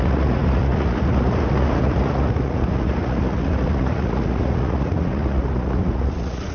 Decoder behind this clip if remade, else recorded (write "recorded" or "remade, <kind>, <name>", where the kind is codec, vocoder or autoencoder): remade, vocoder, Vocos